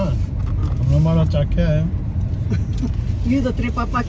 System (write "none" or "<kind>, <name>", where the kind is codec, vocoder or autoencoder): none